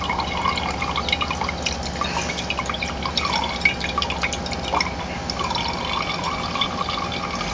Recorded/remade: recorded